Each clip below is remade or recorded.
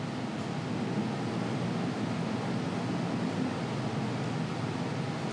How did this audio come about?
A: recorded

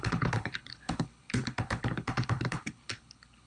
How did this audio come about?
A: remade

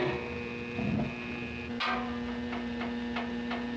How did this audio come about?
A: recorded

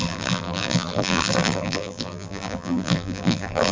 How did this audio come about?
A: remade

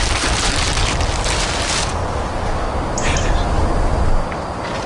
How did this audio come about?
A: recorded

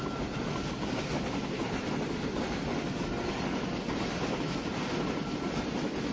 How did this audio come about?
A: recorded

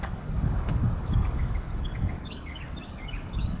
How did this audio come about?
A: remade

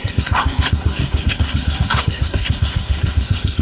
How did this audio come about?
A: remade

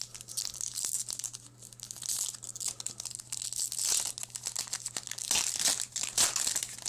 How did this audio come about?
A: recorded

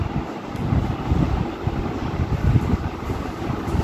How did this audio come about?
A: recorded